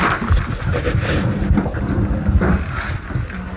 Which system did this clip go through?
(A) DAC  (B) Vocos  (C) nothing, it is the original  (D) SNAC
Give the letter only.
C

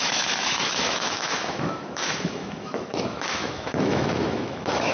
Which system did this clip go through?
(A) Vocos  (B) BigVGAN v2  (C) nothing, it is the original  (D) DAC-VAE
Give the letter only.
D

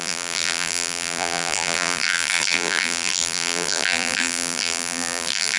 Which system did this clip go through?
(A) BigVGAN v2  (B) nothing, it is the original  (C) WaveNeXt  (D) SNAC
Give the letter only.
A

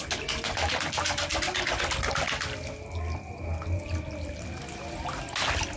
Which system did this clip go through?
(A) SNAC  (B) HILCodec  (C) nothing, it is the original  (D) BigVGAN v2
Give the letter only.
C